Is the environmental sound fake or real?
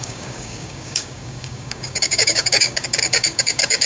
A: fake